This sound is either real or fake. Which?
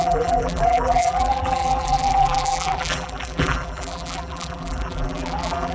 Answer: fake